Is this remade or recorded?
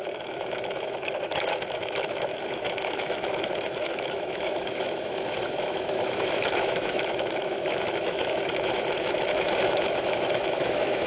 remade